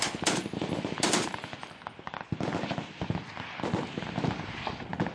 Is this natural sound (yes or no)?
yes